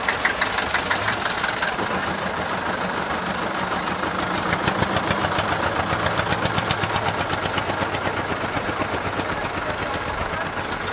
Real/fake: real